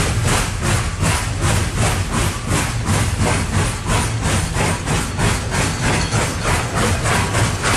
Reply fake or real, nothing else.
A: real